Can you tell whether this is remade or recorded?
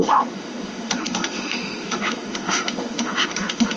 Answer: remade